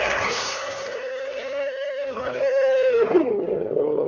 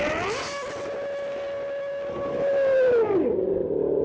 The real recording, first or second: second